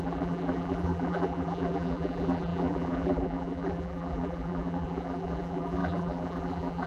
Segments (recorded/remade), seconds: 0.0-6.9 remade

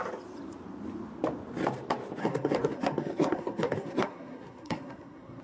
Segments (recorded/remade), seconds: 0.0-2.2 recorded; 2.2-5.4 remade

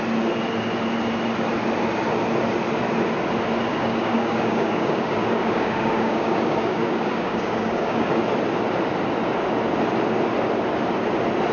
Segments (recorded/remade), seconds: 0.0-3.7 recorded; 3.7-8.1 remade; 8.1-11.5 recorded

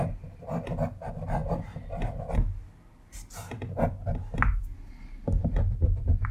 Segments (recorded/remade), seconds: 0.0-6.3 recorded